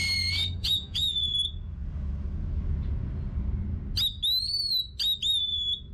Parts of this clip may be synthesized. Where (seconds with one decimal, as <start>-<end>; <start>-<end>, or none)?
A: 0.6-1.1